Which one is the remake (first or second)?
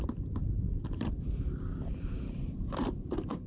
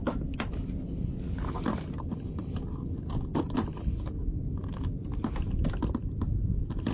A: first